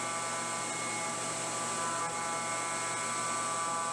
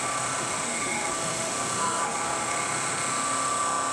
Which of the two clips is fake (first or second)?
second